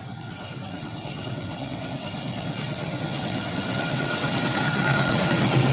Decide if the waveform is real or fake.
fake